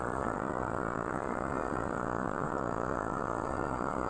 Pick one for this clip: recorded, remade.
remade